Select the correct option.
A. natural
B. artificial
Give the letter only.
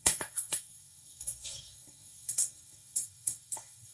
B